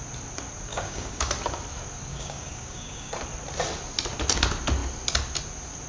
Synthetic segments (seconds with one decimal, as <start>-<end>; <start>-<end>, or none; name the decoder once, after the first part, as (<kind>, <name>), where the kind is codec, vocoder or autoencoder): 0.7-1.3 (codec, DAC); 2.1-3.1